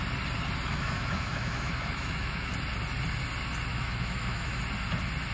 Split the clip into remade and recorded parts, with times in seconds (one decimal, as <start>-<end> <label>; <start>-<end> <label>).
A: 0.0-0.7 recorded; 0.7-2.5 remade; 2.5-3.7 recorded; 3.7-4.6 remade; 4.6-5.3 recorded